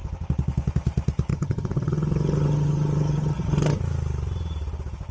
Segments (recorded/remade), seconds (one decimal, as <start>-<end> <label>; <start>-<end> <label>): 0.0-1.3 recorded; 1.3-3.8 remade; 3.8-5.1 recorded